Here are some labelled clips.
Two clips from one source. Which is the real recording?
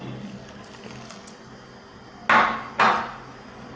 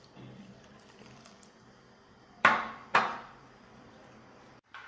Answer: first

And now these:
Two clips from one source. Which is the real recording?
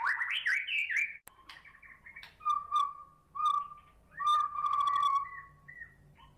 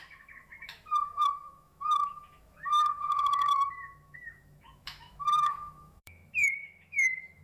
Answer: first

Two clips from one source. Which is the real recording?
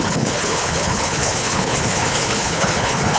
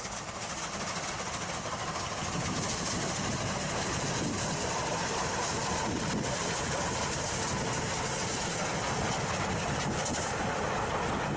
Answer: second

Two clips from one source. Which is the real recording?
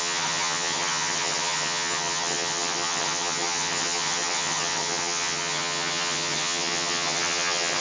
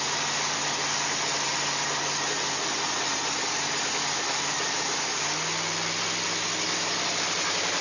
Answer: second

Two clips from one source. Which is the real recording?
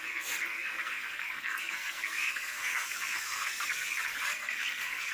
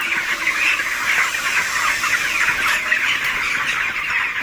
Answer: second